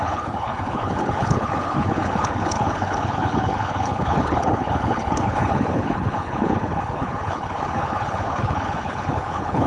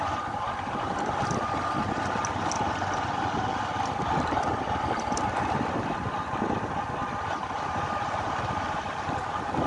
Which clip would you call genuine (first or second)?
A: second